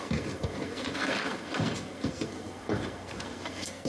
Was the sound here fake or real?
fake